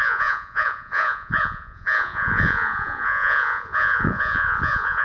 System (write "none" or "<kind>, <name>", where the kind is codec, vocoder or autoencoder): vocoder, Vocos